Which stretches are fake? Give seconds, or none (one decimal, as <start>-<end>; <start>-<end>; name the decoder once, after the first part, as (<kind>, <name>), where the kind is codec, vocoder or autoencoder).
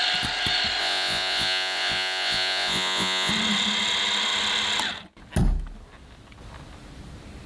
0.8-3.3 (vocoder, Vocos)